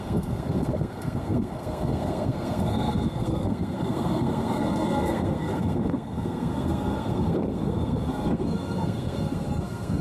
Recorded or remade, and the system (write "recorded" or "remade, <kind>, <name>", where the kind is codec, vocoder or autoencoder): remade, codec, SNAC